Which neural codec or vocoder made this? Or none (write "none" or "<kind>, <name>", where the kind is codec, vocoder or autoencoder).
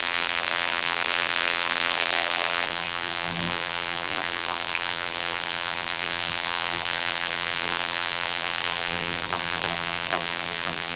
vocoder, BigVGAN v2